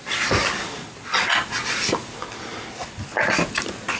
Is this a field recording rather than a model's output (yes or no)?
yes